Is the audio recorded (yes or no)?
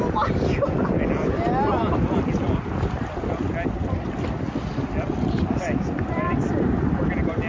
yes